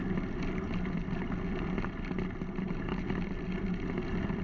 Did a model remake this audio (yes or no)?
no